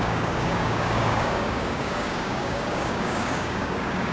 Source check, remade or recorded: remade